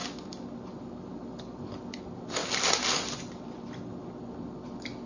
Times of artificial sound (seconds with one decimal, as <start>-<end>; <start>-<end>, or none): none